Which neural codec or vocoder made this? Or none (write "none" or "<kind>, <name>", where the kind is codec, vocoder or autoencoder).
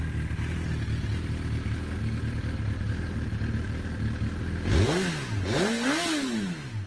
none